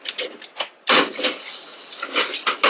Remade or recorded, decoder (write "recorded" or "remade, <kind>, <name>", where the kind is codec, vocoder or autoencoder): recorded